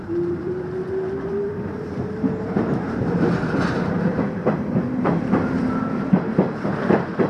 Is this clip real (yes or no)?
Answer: no